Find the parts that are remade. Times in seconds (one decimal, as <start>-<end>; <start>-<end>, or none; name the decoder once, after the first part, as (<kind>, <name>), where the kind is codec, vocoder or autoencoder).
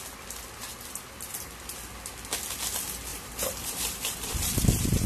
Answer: 3.1-5.1 (vocoder, BigVGAN v2)